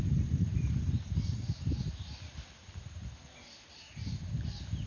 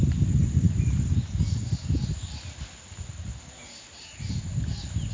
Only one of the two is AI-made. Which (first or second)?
first